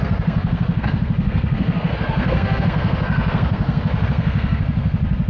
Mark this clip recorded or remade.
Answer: remade